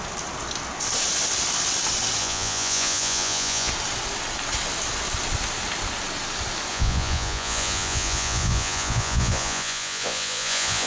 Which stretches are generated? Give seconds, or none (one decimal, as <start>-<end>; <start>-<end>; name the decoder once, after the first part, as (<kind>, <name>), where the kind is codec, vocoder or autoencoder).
2.2-3.7 (vocoder, Vocos); 6.7-10.9